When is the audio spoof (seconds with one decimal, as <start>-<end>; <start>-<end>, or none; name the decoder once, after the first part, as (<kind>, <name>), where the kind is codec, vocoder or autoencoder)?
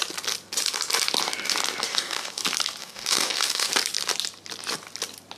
1.9-2.4 (codec, DAC); 2.8-3.7